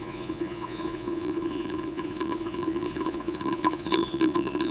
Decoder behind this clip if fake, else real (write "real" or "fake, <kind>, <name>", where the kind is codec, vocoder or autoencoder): fake, vocoder, Vocos